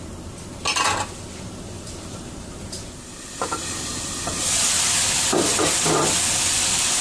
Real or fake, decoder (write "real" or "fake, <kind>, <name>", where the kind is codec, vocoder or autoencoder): real